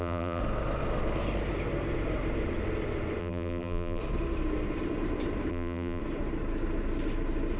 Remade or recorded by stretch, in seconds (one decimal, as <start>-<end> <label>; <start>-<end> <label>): 0.0-0.4 remade; 0.4-3.2 recorded; 3.2-4.0 remade; 4.0-5.5 recorded; 5.5-6.0 remade; 6.0-7.6 recorded